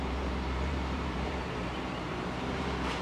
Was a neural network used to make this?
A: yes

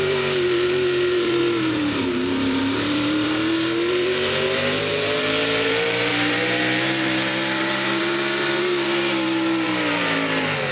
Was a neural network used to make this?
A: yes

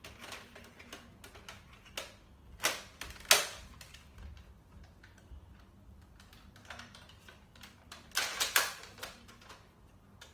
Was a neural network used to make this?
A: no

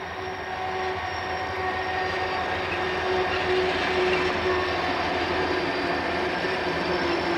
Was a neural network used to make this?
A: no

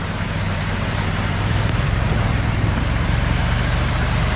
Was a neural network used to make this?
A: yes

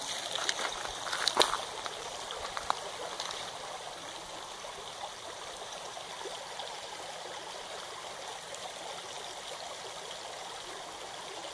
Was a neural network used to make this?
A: no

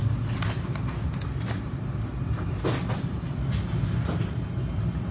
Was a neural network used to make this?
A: no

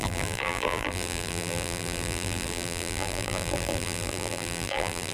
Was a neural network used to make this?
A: yes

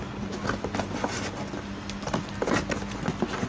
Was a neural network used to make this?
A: yes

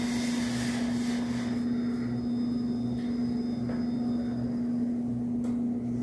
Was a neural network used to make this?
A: no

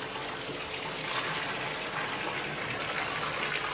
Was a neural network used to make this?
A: no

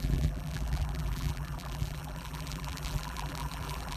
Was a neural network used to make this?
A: yes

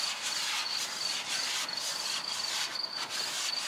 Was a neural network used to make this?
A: no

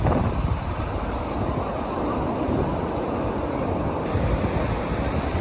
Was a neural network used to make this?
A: no